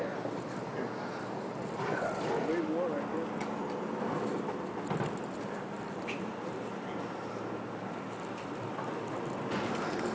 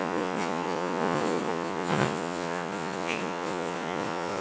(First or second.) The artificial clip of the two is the second